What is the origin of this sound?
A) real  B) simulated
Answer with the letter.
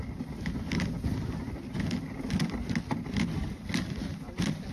A